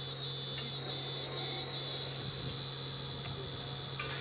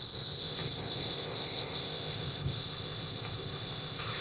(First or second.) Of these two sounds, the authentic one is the first